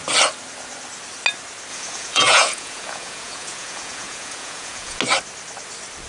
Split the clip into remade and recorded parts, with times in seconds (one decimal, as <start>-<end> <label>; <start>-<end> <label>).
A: 0.0-1.7 recorded; 1.7-5.0 remade; 5.0-6.1 recorded